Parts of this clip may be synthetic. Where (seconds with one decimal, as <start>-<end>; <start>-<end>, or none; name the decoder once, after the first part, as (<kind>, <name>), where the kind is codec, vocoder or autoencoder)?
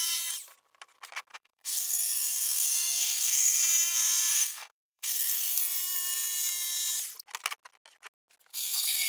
1.3-3.6 (codec, SNAC); 4.3-5.6; 8.5-9.1